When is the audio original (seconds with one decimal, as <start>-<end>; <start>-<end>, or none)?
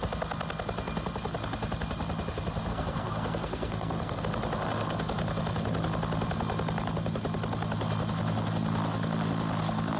0.0-2.7; 4.2-10.0